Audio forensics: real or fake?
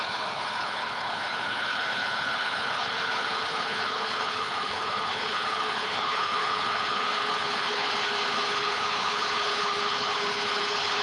fake